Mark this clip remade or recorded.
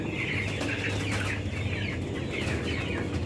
recorded